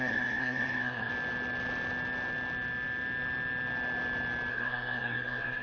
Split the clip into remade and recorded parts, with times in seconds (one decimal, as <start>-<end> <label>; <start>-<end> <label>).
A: 0.0-1.1 remade; 1.1-4.5 recorded; 4.5-5.6 remade